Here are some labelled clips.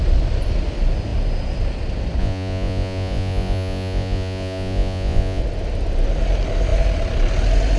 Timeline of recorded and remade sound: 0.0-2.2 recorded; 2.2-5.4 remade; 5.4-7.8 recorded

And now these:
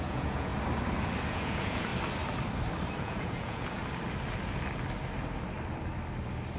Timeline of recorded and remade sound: 0.0-0.5 remade; 0.5-1.3 recorded; 1.3-1.9 remade; 1.9-3.0 recorded; 3.0-3.8 remade; 3.8-6.6 recorded